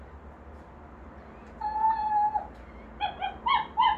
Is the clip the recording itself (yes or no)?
yes